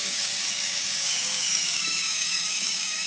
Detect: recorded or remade remade